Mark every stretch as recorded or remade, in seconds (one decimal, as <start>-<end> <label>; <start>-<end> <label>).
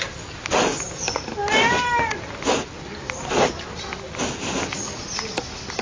0.0-5.8 recorded